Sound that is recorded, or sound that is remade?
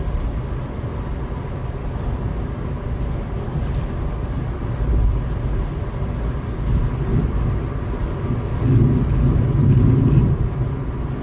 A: recorded